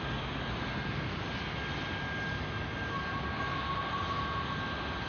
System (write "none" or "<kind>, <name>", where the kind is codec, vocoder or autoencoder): none